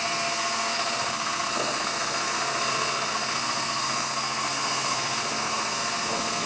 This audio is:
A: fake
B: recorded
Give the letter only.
A